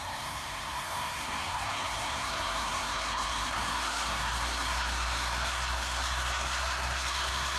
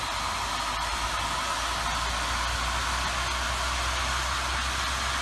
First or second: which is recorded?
second